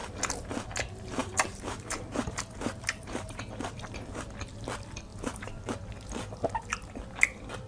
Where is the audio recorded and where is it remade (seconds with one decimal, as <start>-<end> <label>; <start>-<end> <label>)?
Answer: 0.0-1.2 recorded; 1.2-4.2 remade; 4.2-5.1 recorded; 5.1-5.7 remade; 5.7-7.7 recorded